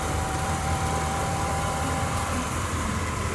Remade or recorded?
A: remade